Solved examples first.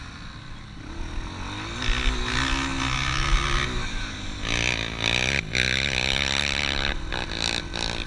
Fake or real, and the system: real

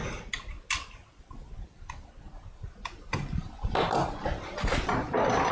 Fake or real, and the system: real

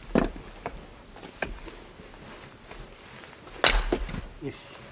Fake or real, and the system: real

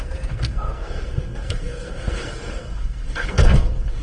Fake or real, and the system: fake, codec, SNAC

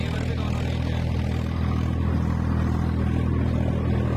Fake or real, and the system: real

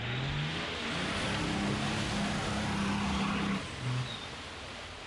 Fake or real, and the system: real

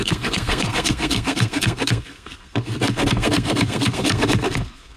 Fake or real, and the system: fake, codec, SNAC